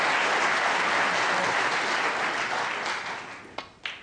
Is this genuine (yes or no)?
yes